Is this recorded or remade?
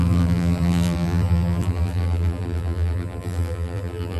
remade